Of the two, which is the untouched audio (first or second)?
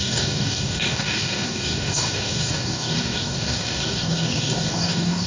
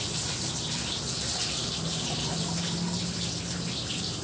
second